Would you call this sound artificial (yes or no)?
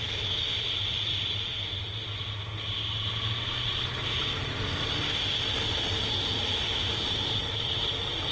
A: no